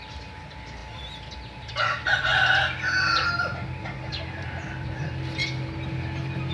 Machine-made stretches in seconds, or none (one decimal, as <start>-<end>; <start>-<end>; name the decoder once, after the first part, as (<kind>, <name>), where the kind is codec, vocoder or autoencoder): 0.0-2.3 (vocoder, BigVGAN v2); 4.1-5.4